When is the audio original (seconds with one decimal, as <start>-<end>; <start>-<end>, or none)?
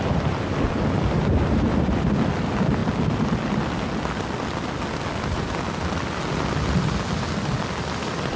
0.0-8.4